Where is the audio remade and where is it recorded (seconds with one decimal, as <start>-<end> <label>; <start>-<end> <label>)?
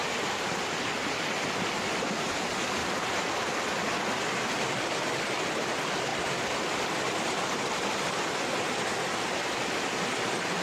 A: 0.0-2.8 recorded; 2.8-3.5 remade; 3.5-10.6 recorded